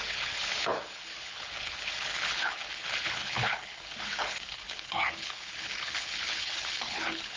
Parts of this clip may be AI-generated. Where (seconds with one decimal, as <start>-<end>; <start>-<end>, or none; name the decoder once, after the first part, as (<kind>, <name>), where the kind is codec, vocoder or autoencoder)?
0.0-7.4 (codec, HILCodec)